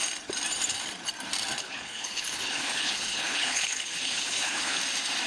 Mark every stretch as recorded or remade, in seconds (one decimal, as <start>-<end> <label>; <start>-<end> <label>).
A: 0.0-1.6 recorded; 1.6-4.8 remade; 4.8-5.3 recorded